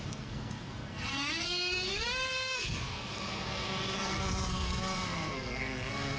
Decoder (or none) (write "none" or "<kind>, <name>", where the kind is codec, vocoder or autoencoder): codec, SNAC